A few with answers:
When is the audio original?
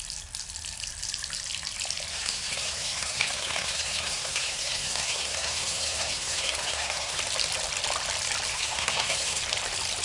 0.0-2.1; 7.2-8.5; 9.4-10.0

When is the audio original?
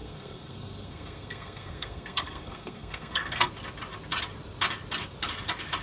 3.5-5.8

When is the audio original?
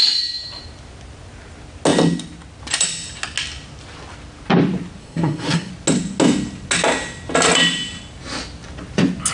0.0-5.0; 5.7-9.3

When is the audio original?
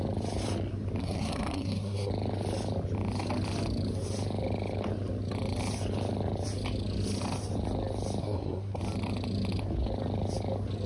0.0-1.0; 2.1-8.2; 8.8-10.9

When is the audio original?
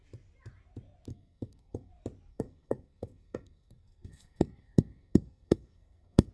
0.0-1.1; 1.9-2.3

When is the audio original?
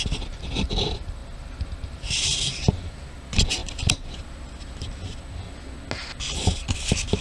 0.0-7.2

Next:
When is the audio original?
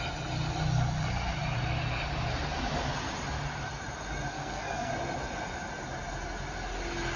0.0-4.3; 4.9-7.2